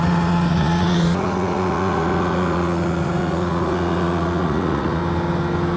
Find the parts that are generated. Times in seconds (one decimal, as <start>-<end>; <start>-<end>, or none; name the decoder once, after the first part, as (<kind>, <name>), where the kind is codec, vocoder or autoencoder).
0.0-5.0 (vocoder, Vocos)